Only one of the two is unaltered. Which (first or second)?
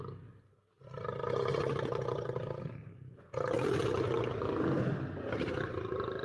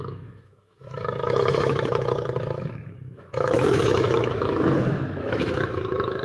first